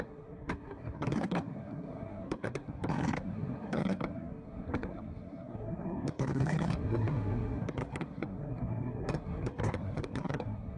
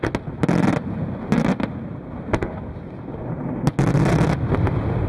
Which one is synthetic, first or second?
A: first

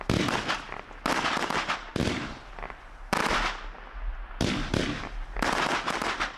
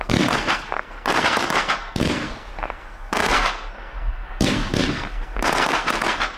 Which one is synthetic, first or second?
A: second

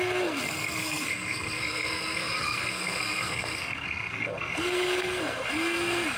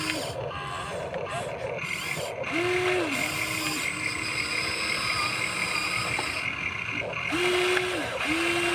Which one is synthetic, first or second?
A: first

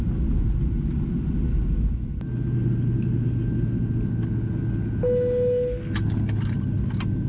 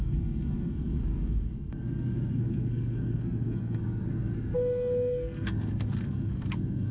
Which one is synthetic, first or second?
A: second